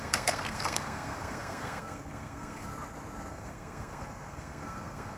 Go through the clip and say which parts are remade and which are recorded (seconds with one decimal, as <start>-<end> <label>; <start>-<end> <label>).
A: 0.0-2.7 remade; 2.7-3.3 recorded; 3.3-5.2 remade